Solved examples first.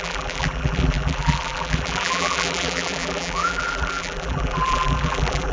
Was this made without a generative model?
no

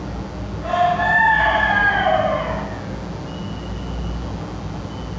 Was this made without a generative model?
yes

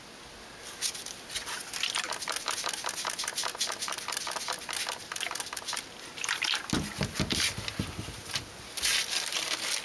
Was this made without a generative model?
yes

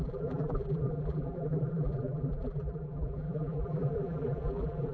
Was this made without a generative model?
no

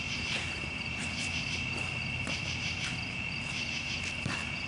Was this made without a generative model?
no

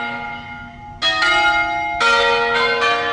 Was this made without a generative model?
yes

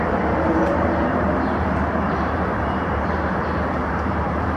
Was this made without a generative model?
no